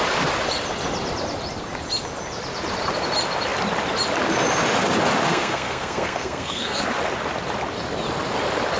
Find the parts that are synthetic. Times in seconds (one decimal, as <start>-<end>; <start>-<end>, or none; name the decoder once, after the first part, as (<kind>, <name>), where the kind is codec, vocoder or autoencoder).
5.3-6.8 (codec, SNAC)